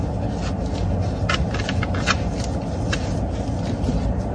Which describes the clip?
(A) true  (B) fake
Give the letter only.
A